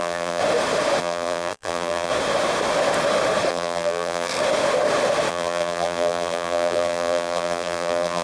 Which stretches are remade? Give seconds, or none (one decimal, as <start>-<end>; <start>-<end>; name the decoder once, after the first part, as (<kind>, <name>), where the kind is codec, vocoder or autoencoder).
0.0-0.4 (vocoder, BigVGAN v2); 1.0-2.1; 3.5-4.3; 5.3-8.2